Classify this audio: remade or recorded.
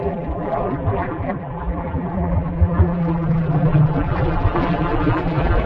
remade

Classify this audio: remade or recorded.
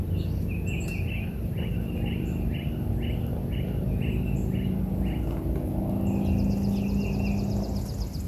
recorded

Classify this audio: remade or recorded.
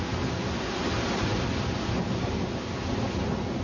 recorded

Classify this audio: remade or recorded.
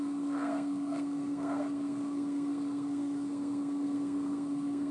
remade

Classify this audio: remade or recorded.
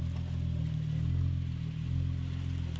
recorded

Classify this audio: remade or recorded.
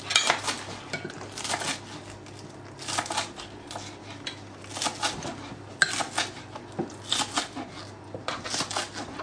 recorded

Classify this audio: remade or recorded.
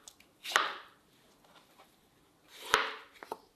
recorded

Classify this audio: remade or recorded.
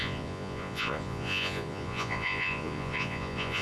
remade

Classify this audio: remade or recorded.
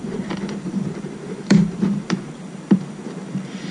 remade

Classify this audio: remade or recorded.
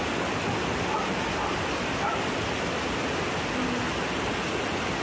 recorded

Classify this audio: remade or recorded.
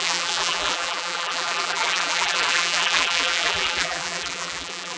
remade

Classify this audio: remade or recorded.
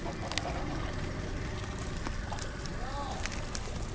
recorded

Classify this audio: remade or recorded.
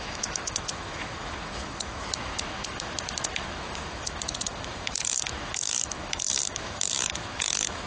remade